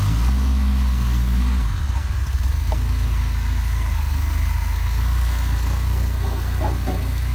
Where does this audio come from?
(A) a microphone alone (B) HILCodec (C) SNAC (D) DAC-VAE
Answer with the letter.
C